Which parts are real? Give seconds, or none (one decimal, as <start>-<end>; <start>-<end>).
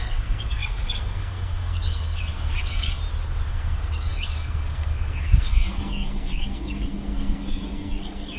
3.0-3.5